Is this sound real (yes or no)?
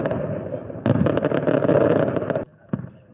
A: yes